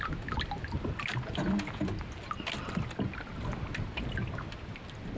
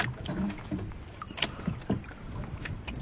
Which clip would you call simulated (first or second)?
second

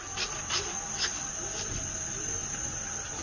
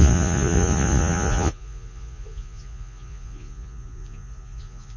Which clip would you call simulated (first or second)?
second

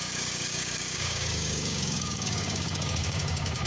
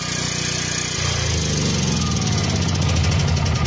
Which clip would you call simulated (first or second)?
first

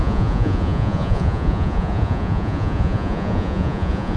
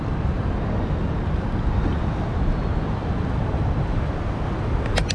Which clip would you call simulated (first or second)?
first